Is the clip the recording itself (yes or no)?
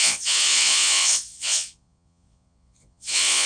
no